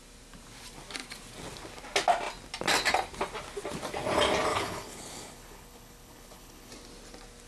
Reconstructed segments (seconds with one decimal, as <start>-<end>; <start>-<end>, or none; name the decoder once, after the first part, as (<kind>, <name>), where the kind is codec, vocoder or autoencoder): 4.5-6.7 (codec, HILCodec)